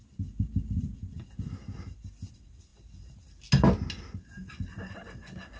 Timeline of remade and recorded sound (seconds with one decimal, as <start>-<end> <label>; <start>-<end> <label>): 0.0-5.6 recorded